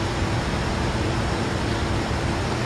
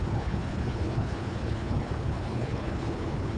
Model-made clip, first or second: second